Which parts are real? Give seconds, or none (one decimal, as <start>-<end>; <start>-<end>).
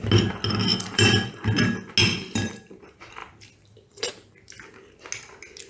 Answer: 0.0-0.7; 1.3-2.0; 2.8-3.2; 4.1-5.7